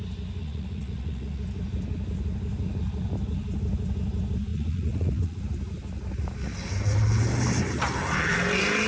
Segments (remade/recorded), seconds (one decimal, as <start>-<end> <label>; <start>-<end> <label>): 0.0-0.4 recorded; 0.4-1.4 remade; 1.4-4.5 recorded; 4.5-5.4 remade; 5.4-8.9 recorded